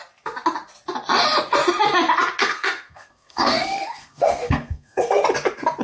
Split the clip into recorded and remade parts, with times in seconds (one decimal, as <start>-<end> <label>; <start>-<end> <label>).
0.0-2.4 recorded; 2.4-5.2 remade; 5.2-5.8 recorded